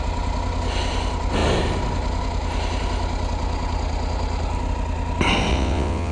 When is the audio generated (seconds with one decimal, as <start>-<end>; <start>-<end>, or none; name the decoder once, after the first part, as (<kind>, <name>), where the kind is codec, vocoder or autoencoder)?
5.5-6.1 (vocoder, WaveNeXt)